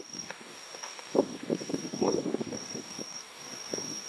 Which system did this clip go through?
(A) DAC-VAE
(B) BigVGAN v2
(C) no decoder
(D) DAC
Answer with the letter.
D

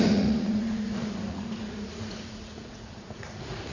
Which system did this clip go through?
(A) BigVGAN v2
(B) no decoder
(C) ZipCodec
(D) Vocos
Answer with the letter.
D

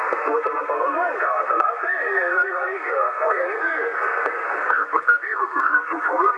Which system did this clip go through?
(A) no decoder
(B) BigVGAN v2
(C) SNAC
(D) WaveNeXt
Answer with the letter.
C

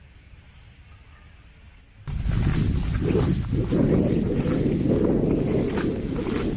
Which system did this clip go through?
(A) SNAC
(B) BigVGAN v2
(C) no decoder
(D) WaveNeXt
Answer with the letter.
C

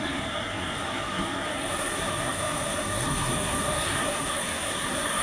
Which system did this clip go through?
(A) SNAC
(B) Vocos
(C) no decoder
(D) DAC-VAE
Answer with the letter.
A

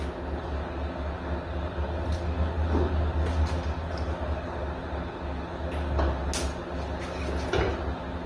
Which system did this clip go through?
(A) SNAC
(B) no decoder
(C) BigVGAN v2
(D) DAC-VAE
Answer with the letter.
B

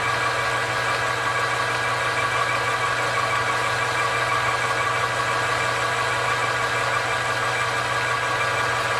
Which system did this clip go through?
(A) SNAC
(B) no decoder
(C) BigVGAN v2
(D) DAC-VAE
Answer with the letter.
B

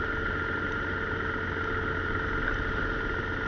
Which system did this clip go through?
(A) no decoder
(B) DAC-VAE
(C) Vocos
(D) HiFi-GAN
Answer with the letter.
A